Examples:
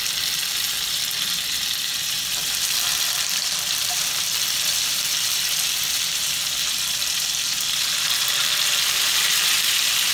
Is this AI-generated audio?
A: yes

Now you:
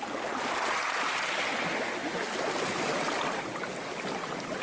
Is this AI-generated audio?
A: no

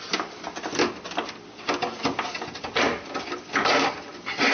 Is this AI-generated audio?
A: no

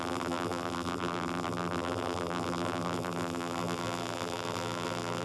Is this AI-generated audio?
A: yes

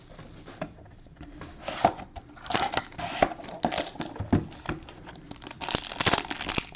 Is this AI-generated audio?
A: no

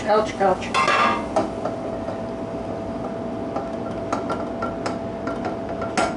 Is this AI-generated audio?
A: no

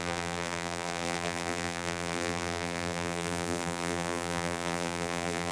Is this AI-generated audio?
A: yes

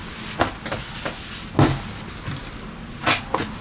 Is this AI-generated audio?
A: no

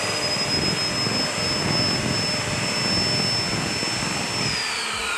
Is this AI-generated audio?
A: no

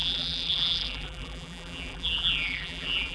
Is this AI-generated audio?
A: yes